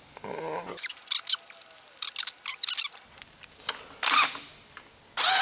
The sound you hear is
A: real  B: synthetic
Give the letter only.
A